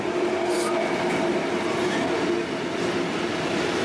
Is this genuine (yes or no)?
yes